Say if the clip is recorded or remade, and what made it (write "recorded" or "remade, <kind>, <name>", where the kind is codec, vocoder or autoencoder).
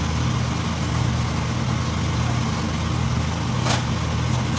recorded